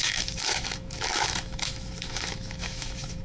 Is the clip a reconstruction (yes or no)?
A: yes